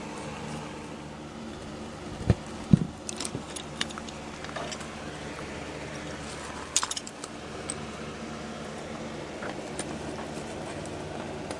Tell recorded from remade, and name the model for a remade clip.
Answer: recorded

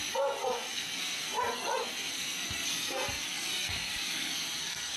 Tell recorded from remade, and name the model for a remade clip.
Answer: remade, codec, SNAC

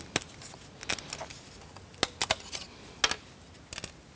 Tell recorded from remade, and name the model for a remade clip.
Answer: recorded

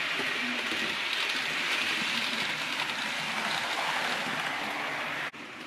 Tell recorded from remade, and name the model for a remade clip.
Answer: recorded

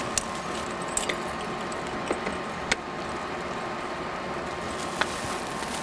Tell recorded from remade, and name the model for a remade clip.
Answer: recorded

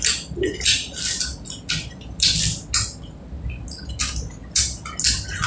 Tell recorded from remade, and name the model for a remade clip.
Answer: recorded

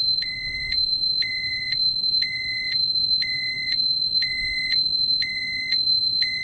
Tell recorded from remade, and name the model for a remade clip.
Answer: remade, vocoder, Vocos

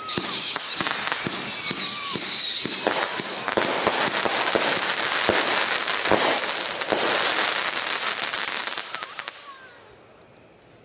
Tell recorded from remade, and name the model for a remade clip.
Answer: recorded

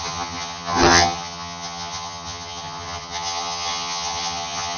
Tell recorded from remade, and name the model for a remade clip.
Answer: remade, vocoder, HiFi-GAN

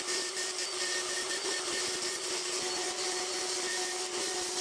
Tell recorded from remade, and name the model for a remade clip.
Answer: remade, vocoder, BigVGAN v2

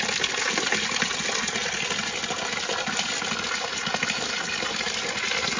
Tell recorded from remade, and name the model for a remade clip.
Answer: recorded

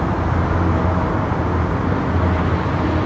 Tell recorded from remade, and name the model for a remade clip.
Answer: recorded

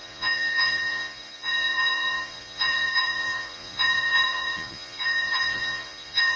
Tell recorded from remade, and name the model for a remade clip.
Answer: remade, vocoder, Vocos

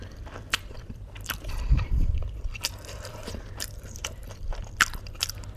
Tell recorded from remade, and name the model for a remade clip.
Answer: remade, vocoder, BigVGAN v2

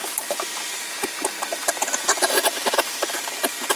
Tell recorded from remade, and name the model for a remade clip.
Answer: remade, vocoder, BigVGAN v2